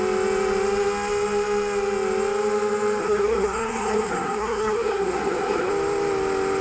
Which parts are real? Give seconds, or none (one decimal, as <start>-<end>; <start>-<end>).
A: 0.0-3.0; 5.7-6.6